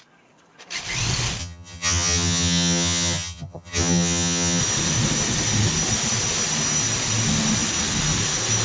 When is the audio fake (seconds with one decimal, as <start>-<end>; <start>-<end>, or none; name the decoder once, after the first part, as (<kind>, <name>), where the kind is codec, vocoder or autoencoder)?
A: 1.4-4.6 (vocoder, HiFi-GAN)